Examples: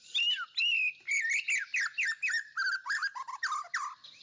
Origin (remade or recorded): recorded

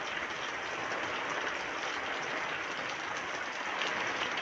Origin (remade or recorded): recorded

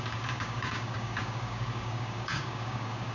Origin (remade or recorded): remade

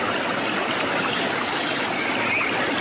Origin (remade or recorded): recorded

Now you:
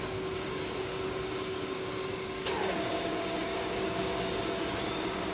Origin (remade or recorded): remade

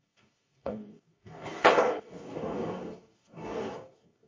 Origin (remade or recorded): remade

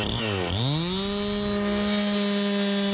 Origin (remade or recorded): recorded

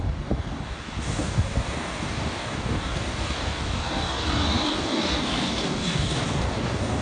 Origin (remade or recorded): remade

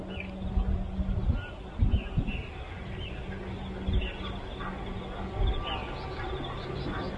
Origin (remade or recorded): recorded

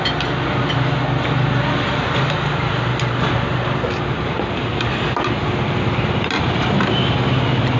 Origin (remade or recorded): recorded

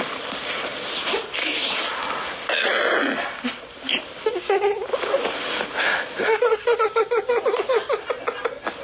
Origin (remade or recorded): recorded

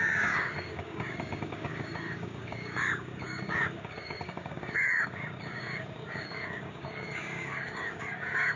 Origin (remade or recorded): remade